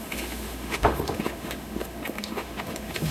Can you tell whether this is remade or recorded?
remade